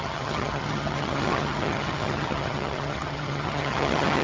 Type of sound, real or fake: fake